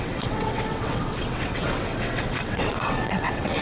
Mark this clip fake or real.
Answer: fake